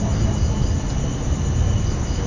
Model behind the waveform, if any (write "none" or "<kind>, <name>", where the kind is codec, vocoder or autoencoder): none